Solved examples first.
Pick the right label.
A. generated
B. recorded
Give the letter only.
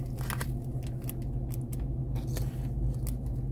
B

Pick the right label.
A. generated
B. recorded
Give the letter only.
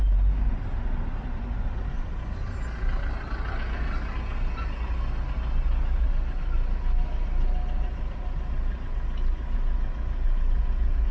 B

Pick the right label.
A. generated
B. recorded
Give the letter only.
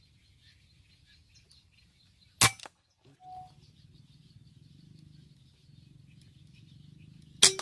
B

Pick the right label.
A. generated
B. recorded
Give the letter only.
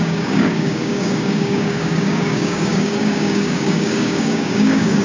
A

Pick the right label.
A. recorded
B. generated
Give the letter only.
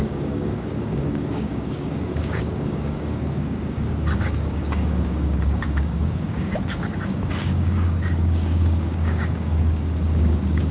B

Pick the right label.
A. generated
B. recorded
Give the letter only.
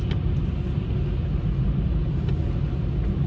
B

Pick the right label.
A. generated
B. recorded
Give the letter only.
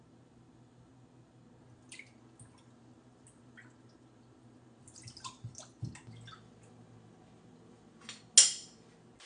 B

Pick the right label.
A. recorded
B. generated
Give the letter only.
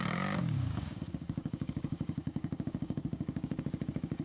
B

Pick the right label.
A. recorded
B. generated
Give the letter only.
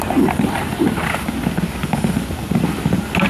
A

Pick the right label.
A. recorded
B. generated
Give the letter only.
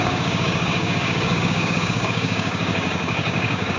B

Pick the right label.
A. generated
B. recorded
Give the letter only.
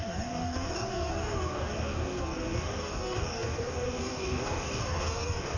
A